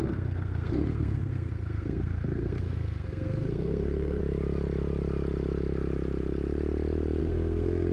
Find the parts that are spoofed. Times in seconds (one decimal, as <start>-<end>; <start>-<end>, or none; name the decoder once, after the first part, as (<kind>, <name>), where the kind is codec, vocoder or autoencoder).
0.0-4.2 (codec, SNAC); 7.2-7.9